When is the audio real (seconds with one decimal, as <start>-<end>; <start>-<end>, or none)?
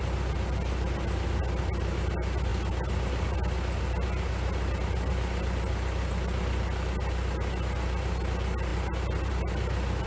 0.0-10.1